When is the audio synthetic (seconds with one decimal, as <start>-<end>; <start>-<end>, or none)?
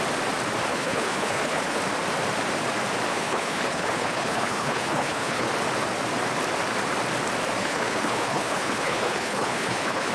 0.7-1.8; 3.1-5.5; 7.6-10.1